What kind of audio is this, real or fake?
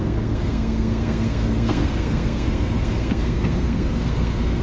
fake